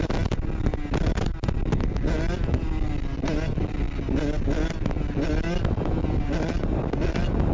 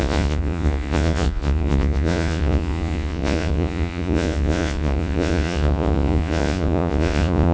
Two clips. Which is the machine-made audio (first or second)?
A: second